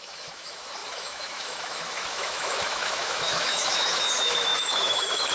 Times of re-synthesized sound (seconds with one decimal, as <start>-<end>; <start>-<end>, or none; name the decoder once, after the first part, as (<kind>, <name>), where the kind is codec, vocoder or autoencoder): 0.0-5.3 (autoencoder, DAC-VAE)